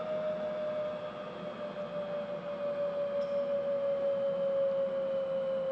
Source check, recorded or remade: recorded